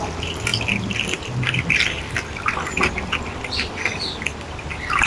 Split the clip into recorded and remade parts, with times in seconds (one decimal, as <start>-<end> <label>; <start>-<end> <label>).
0.0-5.1 recorded